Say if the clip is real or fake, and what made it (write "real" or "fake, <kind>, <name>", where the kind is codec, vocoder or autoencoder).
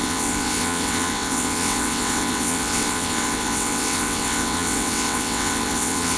fake, vocoder, WaveNeXt